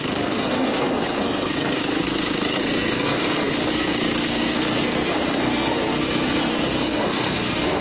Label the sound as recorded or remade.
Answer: remade